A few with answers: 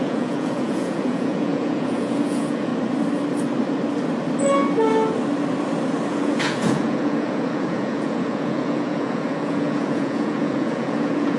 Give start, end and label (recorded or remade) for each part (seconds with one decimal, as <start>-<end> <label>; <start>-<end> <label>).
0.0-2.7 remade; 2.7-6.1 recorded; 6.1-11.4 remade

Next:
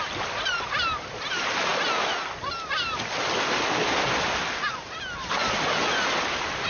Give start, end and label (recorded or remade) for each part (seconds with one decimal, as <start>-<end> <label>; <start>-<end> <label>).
0.0-6.7 recorded

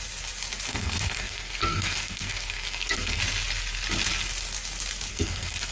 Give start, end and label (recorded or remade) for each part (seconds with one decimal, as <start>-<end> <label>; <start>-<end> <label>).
0.0-0.7 recorded; 0.7-3.2 remade; 3.2-5.1 recorded; 5.1-5.7 remade

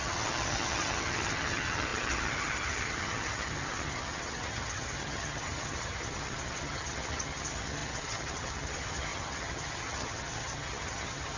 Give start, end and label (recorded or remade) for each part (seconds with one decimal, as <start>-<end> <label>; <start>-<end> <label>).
0.0-11.4 remade